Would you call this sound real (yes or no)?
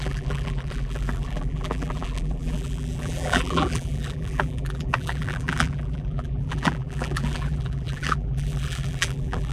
no